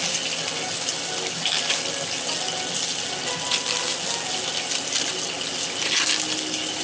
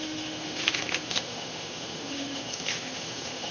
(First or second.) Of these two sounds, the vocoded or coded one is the second